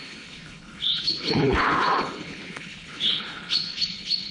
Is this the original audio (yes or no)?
no